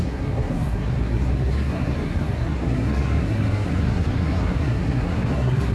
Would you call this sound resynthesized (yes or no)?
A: yes